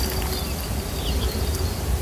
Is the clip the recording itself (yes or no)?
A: yes